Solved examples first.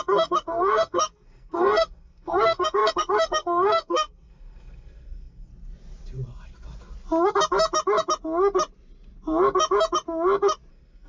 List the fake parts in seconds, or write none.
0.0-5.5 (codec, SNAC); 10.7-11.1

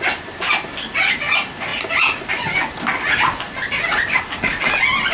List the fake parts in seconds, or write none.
none

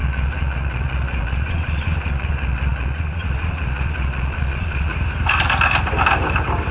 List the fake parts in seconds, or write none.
0.0-4.9 (vocoder, Vocos)

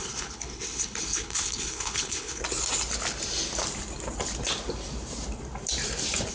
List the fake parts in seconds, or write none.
0.0-2.4 (codec, HILCodec)

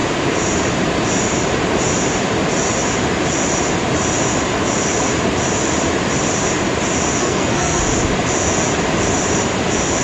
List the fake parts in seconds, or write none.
7.2-7.8 (codec, SNAC)

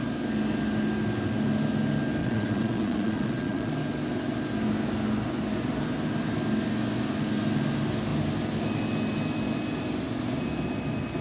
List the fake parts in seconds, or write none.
2.2-3.7 (vocoder, Vocos)

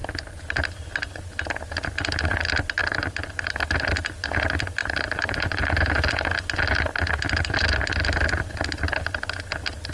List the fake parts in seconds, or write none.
0.0-1.2 (vocoder, BigVGAN v2); 2.8-3.4; 4.8-6.1